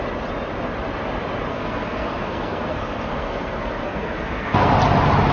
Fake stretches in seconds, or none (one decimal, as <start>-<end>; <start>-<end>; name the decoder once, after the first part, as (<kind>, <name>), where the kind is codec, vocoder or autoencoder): 1.5-4.7 (codec, SNAC)